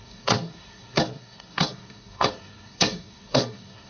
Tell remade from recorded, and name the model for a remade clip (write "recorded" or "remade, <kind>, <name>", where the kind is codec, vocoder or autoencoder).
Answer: remade, codec, SNAC